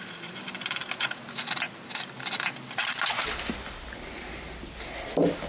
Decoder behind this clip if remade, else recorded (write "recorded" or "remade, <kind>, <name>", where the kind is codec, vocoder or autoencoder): remade, vocoder, BigVGAN v2